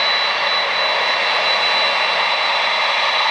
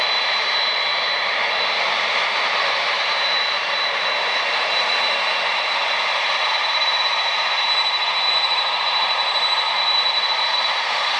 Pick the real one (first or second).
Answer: first